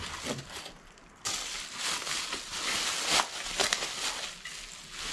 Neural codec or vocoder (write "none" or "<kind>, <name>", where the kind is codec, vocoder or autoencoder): none